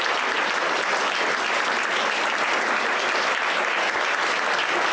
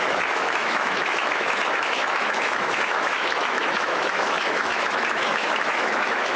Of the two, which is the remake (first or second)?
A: second